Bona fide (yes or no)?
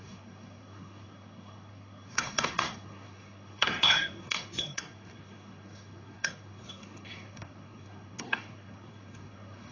no